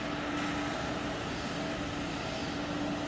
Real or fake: real